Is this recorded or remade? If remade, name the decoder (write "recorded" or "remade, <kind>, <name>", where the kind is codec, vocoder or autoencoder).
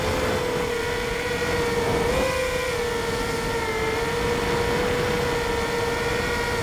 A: recorded